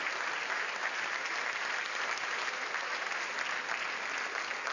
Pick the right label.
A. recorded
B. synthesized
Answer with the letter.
A